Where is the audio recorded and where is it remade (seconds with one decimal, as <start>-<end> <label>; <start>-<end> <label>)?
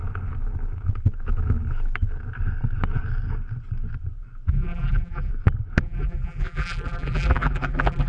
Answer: 0.0-4.5 recorded; 4.5-5.3 remade; 5.3-5.8 recorded; 5.8-8.1 remade